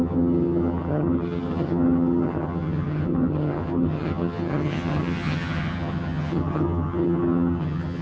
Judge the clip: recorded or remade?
remade